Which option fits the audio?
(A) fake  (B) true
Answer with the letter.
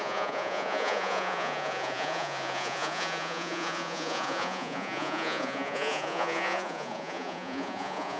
A